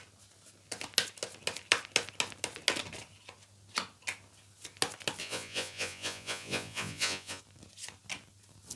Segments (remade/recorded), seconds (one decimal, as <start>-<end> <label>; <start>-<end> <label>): 0.0-5.2 recorded; 5.2-7.4 remade; 7.4-8.8 recorded